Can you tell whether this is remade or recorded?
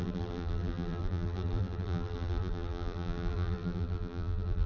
remade